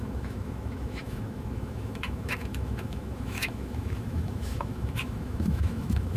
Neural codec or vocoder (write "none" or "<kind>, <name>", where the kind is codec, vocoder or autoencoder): autoencoder, DAC-VAE